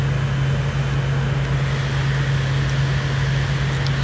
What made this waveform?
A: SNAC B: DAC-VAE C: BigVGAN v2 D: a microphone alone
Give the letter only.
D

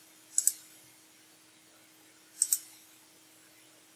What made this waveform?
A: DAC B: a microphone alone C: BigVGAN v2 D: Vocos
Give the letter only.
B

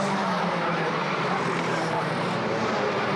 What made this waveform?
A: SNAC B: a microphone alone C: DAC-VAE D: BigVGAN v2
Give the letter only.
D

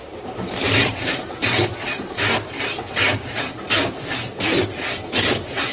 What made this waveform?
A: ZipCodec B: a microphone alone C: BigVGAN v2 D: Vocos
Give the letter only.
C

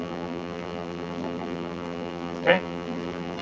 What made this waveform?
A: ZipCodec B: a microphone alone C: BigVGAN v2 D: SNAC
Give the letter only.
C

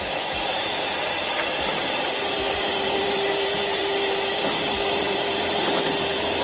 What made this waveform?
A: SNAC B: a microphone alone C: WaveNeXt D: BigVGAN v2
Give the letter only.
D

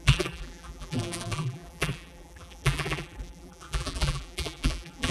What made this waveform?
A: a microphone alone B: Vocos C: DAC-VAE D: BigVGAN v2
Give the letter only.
D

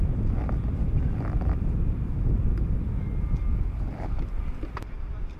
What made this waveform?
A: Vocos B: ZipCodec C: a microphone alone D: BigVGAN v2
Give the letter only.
C